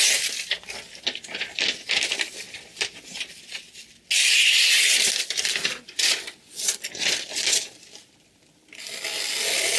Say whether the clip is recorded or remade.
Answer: recorded